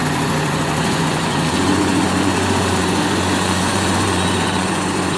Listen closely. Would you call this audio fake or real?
fake